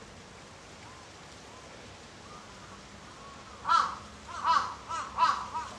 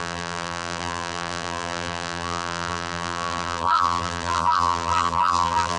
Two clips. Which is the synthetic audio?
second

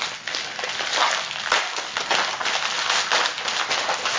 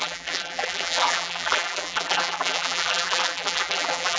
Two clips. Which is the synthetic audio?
second